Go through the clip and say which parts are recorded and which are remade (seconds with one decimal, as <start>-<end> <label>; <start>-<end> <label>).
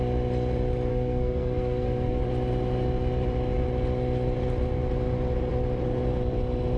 0.0-0.9 recorded; 0.9-2.2 remade; 2.2-6.8 recorded